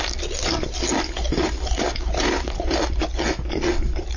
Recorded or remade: recorded